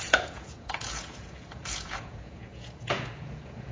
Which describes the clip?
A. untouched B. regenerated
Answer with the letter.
B